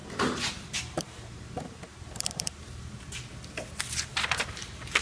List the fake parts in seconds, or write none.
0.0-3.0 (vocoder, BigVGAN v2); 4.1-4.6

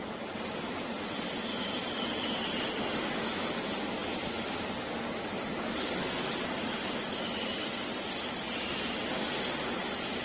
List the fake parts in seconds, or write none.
4.0-5.0 (vocoder, BigVGAN v2); 7.5-8.2